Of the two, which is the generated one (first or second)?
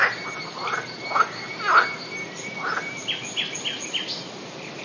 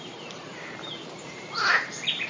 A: second